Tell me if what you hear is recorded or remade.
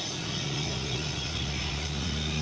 remade